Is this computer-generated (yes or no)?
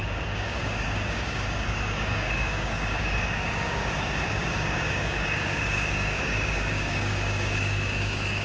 yes